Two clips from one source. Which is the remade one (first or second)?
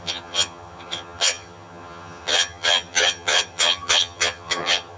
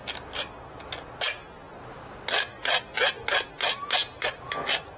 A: first